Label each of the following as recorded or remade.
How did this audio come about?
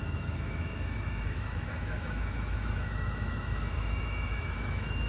remade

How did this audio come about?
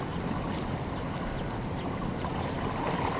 recorded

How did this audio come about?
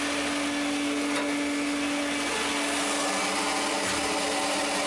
recorded